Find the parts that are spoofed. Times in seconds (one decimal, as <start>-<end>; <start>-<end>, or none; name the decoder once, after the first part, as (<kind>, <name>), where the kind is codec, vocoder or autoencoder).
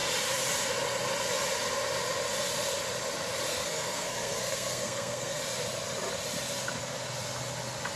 3.5-5.4 (codec, SNAC)